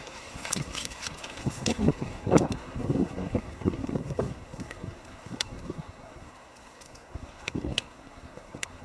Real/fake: fake